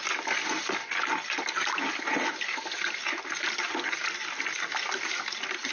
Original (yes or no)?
yes